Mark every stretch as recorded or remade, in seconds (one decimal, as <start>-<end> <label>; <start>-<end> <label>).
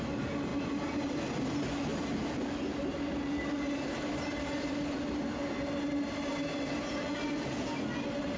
0.0-8.4 recorded